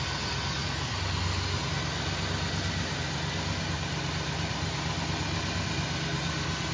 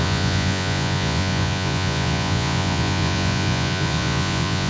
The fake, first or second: second